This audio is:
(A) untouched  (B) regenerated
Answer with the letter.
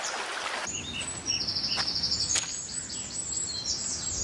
A